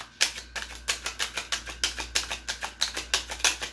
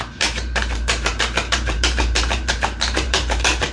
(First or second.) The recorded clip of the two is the first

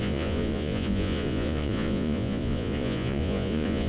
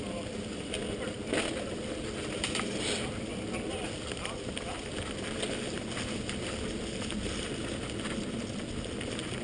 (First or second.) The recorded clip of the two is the second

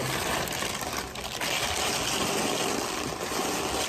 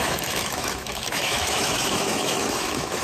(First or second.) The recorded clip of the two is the first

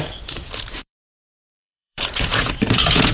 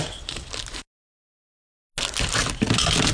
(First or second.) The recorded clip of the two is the second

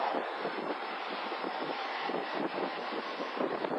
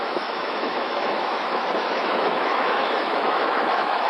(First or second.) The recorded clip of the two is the first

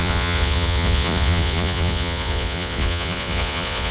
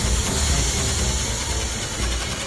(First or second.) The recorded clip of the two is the second